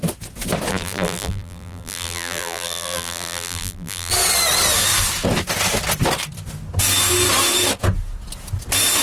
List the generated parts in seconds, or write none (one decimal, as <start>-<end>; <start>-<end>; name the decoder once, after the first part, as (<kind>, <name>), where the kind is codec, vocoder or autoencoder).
0.7-4.1 (vocoder, BigVGAN v2)